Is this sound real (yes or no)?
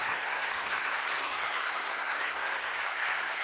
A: no